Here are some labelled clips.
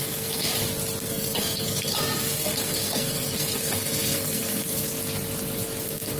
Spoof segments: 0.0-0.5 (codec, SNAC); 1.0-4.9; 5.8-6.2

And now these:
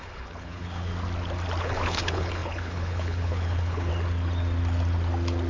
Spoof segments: 0.0-0.9 (codec, HILCodec); 1.6-3.9

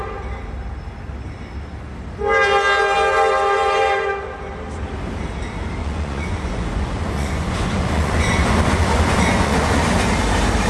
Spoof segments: 5.8-9.8 (vocoder, Vocos)

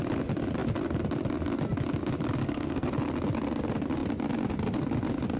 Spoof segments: 2.4-2.9 (codec, SNAC)

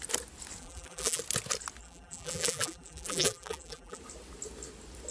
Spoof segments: 0.6-1.2 (vocoder, BigVGAN v2); 1.8-4.0